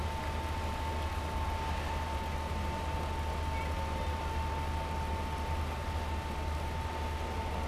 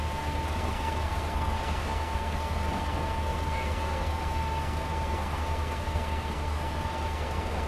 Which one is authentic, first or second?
first